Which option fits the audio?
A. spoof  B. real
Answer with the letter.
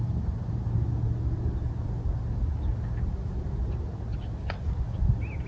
B